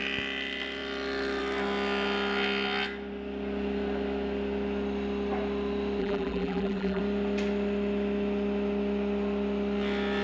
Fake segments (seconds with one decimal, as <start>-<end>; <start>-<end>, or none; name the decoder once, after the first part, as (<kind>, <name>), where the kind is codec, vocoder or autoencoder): 6.0-7.0 (vocoder, BigVGAN v2)